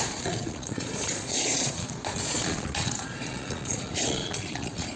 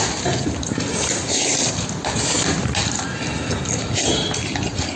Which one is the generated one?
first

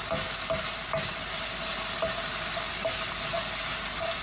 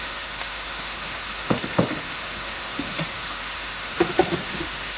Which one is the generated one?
second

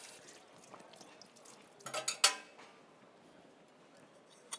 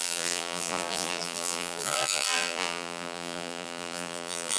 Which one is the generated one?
second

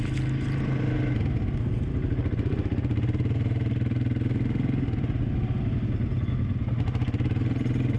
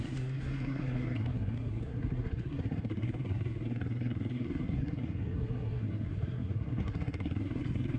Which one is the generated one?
second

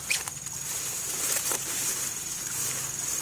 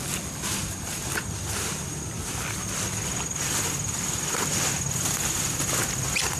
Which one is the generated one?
first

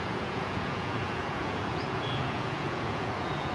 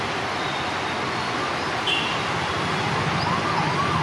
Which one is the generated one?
first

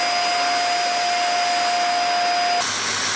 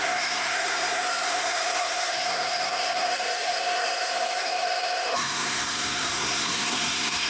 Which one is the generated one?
second